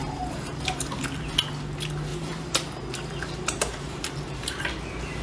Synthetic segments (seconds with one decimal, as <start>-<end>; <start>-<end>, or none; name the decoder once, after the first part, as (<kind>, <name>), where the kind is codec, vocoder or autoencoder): 0.0-0.9 (vocoder, BigVGAN v2); 2.1-4.6